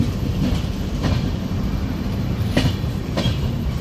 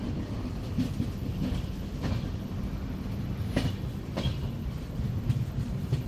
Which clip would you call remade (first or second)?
first